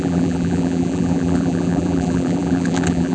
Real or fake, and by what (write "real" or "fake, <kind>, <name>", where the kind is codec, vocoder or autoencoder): fake, vocoder, BigVGAN v2